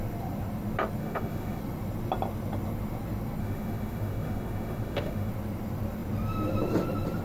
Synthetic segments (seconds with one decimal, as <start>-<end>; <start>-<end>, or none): 1.0-1.6; 3.4-5.3